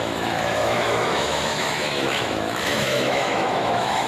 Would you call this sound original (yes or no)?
no